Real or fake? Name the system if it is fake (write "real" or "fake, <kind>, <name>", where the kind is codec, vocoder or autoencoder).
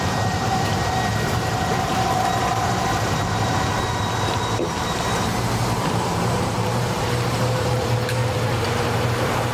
fake, vocoder, BigVGAN v2